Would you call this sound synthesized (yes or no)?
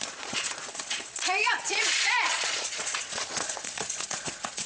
yes